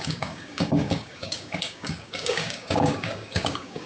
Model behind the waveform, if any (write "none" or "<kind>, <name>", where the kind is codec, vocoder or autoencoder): codec, DAC